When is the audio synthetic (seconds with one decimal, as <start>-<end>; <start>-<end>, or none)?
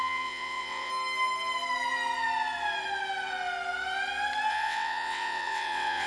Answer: 0.0-0.9; 4.5-6.1